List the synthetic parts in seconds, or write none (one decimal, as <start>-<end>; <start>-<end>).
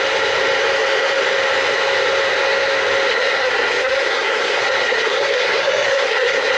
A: 3.1-6.6